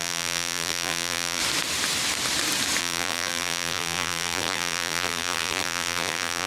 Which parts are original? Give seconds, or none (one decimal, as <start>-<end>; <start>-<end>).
1.4-2.8